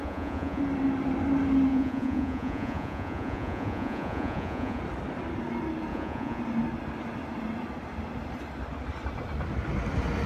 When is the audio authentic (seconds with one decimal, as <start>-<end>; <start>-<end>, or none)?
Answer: 0.6-1.7; 4.8-5.9; 6.4-10.3